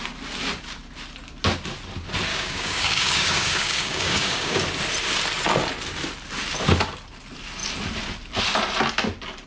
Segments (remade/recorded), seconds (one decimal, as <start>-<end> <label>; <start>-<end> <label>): 0.0-2.3 recorded; 2.3-4.6 remade; 4.6-9.5 recorded